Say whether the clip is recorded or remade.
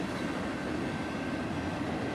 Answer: recorded